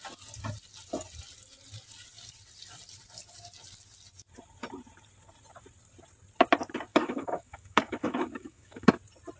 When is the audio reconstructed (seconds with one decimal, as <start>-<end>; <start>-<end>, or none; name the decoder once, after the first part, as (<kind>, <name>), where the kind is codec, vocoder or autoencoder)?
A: 6.9-8.9 (autoencoder, DAC-VAE)